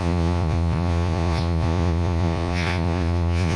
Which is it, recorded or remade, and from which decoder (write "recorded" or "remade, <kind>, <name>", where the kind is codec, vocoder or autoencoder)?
remade, vocoder, Vocos